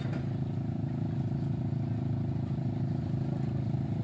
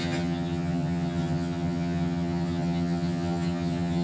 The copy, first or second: second